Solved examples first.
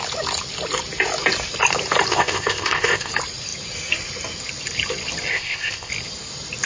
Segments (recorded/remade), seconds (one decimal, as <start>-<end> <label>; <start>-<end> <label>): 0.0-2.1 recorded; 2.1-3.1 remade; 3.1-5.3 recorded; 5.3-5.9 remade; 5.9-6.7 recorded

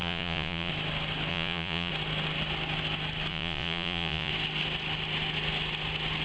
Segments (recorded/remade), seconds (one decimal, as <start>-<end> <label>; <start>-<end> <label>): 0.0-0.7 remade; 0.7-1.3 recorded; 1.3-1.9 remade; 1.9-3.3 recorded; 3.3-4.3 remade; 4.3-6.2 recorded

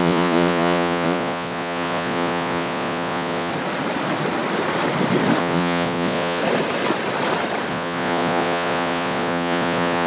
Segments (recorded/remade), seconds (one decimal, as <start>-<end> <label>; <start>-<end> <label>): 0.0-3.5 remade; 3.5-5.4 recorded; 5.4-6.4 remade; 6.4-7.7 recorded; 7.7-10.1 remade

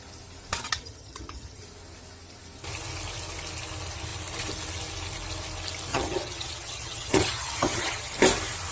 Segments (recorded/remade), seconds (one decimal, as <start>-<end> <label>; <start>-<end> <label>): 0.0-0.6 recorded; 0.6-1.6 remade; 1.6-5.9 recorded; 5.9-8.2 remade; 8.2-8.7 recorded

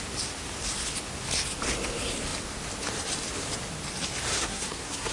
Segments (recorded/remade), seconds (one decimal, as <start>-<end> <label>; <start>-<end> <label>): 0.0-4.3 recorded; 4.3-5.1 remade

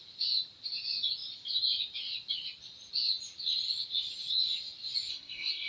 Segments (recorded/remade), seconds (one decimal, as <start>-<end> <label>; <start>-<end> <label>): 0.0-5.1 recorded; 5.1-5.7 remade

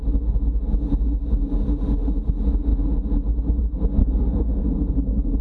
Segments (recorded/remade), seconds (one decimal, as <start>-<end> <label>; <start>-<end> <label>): 0.0-4.0 recorded; 4.0-4.7 remade; 4.7-5.4 recorded

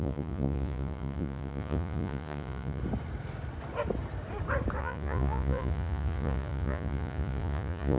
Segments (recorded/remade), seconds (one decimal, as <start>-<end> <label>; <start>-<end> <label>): 0.0-2.8 remade; 2.8-4.8 recorded; 4.8-8.0 remade